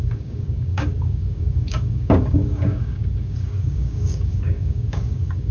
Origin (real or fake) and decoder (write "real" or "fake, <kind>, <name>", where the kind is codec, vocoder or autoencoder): fake, codec, DAC